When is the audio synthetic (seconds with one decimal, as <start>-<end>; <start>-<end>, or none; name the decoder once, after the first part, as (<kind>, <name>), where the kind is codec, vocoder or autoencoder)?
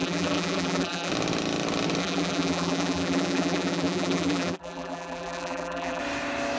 0.0-1.1 (vocoder, BigVGAN v2); 2.0-6.0